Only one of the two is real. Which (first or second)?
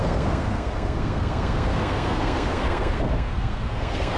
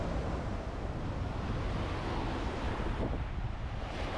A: second